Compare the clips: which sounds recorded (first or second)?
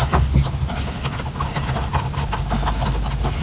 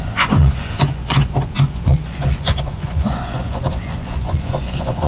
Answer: first